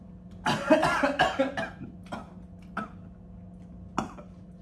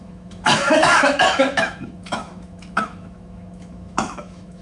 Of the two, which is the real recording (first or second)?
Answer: first